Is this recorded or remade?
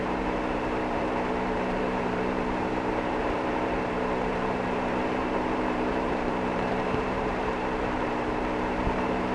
remade